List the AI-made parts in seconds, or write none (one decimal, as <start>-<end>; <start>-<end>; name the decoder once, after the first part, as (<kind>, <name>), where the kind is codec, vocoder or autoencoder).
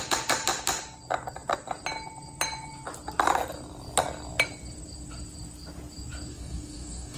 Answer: 6.3-7.2 (codec, DAC)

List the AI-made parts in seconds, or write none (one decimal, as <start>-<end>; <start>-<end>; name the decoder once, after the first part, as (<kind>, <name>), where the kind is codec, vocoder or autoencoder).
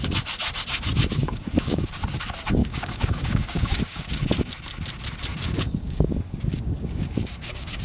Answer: 1.2-1.8 (codec, DAC); 2.6-4.5; 5.3-7.8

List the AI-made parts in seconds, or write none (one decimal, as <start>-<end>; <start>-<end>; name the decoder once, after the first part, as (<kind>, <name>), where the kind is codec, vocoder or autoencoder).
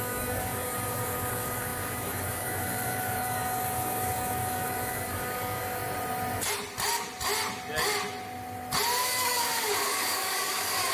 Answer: 0.0-5.8 (codec, DAC); 9.0-10.9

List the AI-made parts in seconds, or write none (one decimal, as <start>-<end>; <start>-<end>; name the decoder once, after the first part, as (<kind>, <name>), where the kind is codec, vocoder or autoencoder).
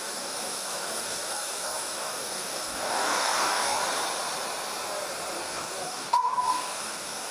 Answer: 0.0-3.8 (codec, DAC); 5.4-7.3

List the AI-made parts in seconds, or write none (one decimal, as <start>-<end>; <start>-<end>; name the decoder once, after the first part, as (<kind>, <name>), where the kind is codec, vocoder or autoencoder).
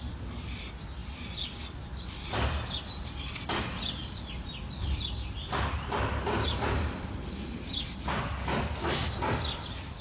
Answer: none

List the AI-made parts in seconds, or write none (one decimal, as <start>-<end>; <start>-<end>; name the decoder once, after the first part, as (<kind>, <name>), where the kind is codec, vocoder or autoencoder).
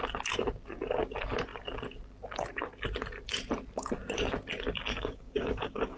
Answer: 4.9-6.0 (codec, DAC)